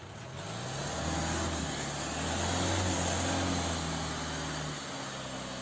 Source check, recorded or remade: recorded